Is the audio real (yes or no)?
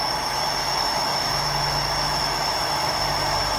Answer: no